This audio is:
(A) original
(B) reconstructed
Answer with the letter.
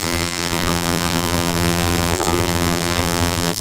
B